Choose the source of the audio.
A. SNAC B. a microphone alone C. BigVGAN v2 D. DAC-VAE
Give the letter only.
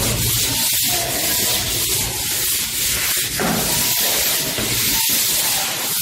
B